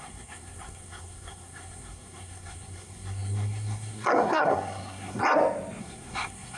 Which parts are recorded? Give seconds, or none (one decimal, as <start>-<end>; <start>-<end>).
5.2-5.8